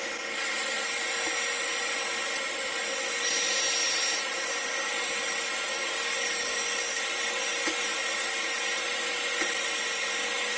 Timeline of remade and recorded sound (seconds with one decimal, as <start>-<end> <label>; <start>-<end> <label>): 0.0-5.7 recorded; 5.7-7.0 remade; 7.0-10.6 recorded

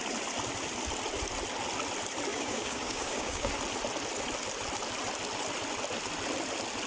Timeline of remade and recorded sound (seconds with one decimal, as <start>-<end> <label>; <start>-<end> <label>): 0.0-2.3 recorded; 2.3-3.5 remade; 3.5-6.9 recorded

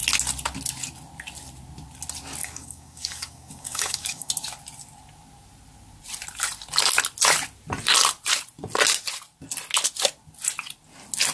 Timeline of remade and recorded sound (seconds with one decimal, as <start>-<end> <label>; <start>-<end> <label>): 0.0-2.4 recorded; 2.4-4.3 remade; 4.3-11.3 recorded

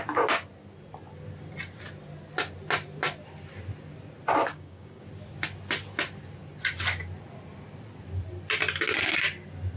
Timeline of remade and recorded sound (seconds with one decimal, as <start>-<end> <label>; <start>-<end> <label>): 0.0-4.4 recorded; 4.4-5.0 remade; 5.0-9.8 recorded